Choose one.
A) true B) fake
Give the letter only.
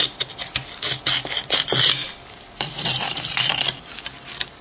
A